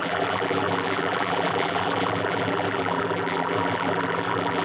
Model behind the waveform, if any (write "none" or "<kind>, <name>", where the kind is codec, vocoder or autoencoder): vocoder, BigVGAN v2